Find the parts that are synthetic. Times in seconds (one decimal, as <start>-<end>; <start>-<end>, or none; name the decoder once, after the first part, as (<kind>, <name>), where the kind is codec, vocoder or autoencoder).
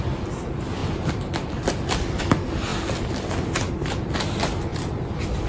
0.0-2.7 (vocoder, BigVGAN v2); 3.3-5.5